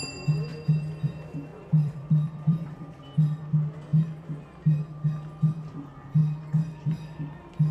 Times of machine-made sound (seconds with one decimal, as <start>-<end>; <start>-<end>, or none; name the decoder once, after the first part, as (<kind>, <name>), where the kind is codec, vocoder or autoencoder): 1.5-3.0 (vocoder, BigVGAN v2)